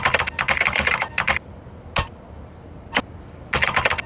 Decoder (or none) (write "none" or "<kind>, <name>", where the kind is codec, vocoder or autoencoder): none